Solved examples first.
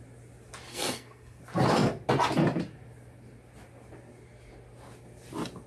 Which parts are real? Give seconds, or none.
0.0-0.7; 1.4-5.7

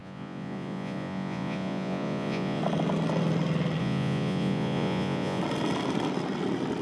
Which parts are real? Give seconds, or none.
2.6-3.8; 5.4-6.8

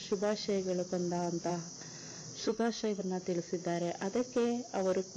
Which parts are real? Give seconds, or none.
0.0-2.4; 3.0-5.2

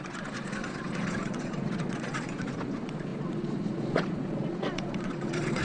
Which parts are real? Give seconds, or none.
none

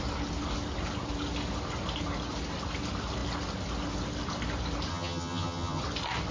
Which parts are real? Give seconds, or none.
0.0-4.9; 5.8-6.3

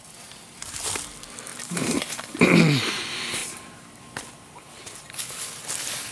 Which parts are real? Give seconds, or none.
0.0-1.5; 2.0-3.4; 4.0-6.1

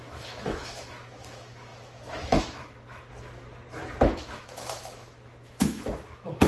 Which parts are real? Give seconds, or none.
3.1-4.0